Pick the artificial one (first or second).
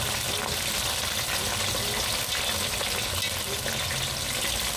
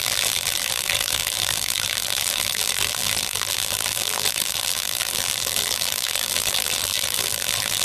second